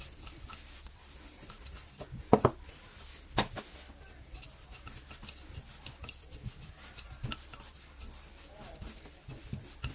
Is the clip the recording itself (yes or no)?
yes